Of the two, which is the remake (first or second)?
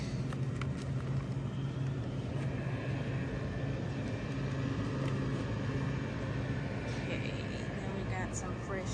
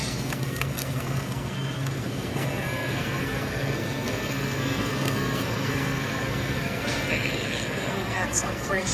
second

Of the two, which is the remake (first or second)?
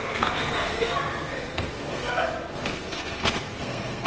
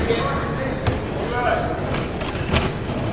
first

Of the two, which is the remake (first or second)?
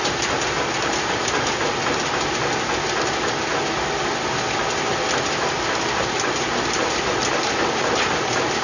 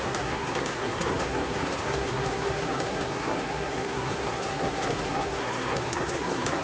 second